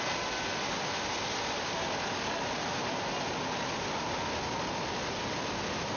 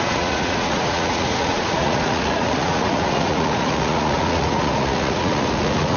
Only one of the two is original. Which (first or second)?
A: first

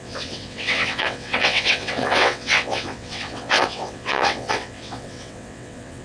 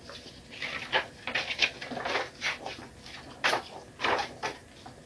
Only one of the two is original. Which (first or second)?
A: second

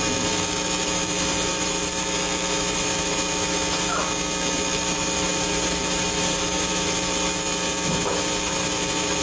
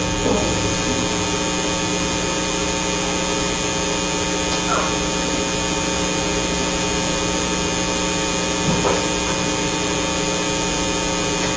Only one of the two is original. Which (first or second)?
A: second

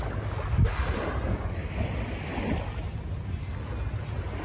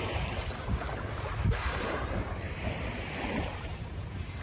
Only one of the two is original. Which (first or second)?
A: first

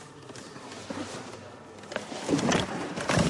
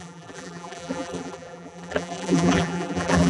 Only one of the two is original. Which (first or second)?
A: first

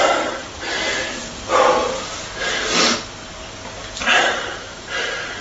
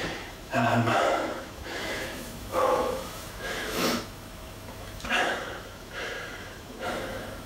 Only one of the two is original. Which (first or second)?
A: first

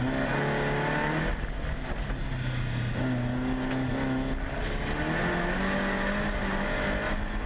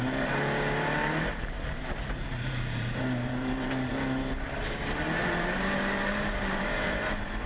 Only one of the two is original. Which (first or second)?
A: first